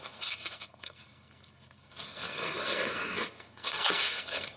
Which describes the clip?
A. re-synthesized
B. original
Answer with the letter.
A